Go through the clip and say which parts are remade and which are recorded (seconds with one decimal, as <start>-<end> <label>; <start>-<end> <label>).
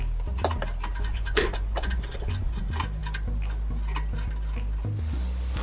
0.0-0.9 recorded; 0.9-2.6 remade; 2.6-5.6 recorded